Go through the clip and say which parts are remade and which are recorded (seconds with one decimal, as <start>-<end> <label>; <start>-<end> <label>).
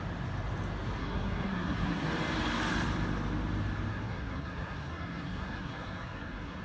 0.0-1.0 recorded; 1.0-2.1 remade; 2.1-3.9 recorded; 3.9-6.6 remade